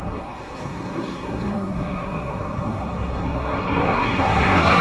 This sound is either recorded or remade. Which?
remade